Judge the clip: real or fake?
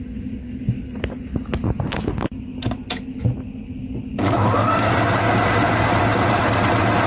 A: real